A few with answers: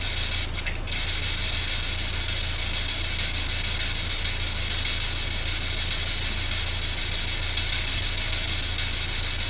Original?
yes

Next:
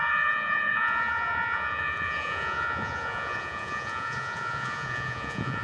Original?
no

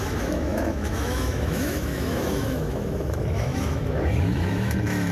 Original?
no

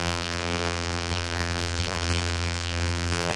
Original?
no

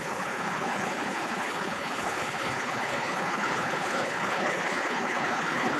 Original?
no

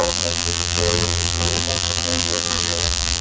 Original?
no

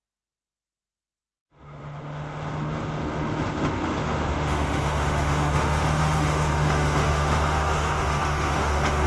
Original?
no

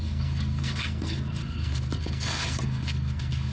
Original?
no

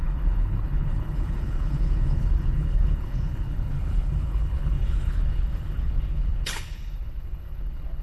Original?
no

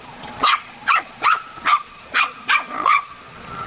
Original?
no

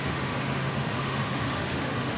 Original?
no